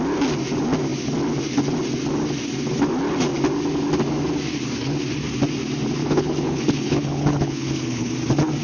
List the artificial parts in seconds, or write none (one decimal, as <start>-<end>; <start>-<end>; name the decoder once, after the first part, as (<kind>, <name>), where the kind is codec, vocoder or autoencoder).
6.0-8.1 (codec, HILCodec)